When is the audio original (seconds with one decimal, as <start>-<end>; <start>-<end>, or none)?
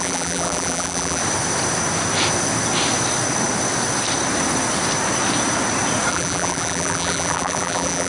1.2-6.1